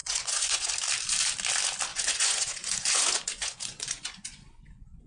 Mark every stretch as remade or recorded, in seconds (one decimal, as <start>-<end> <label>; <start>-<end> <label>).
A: 0.0-0.7 remade; 0.7-1.9 recorded; 1.9-5.1 remade